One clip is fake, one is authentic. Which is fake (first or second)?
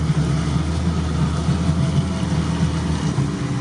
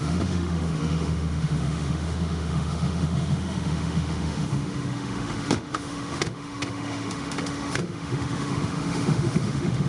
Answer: second